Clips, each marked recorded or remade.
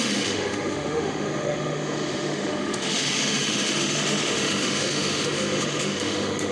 remade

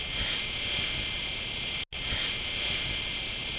recorded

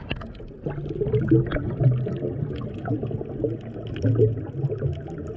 recorded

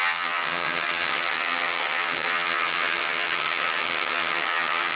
remade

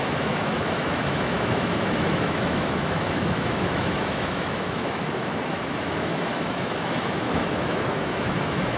remade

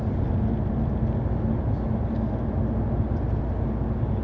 recorded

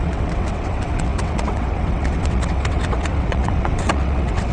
remade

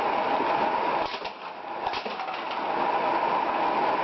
recorded